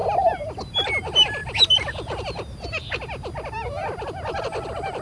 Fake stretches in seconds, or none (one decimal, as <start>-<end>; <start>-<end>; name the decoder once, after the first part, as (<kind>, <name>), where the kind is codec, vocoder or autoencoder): none

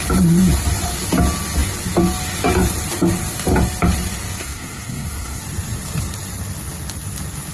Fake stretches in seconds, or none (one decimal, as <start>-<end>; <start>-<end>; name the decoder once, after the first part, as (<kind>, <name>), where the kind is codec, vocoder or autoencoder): 4.4-5.4 (codec, SNAC)

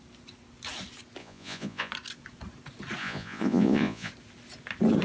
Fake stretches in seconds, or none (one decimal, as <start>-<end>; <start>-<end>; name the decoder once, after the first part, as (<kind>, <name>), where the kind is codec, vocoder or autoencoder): 1.2-1.9 (vocoder, Vocos); 3.0-4.1

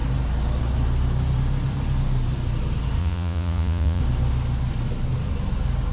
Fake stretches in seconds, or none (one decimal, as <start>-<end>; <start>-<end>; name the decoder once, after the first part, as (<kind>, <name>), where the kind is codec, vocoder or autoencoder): 3.0-4.0 (vocoder, Vocos)

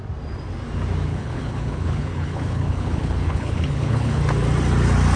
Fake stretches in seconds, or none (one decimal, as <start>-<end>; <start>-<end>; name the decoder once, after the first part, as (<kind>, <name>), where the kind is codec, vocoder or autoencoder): 1.1-4.2 (codec, HILCodec)

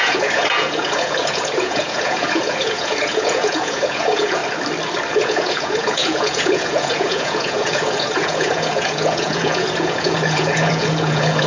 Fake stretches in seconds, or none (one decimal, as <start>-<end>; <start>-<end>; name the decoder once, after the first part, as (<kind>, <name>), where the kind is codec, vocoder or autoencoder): 0.0-4.4 (vocoder, Vocos); 5.1-11.5

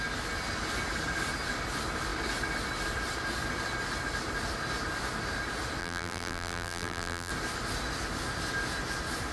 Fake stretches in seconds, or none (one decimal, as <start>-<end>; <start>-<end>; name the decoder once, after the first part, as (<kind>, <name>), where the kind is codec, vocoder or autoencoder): 5.8-7.3 (vocoder, BigVGAN v2)

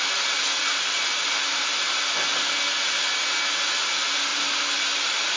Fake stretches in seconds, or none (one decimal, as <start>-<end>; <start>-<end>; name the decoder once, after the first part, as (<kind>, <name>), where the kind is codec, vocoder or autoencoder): none